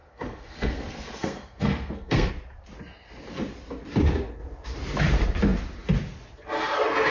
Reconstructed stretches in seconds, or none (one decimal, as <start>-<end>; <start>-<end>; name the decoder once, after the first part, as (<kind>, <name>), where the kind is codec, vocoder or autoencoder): 0.0-2.3 (codec, SNAC)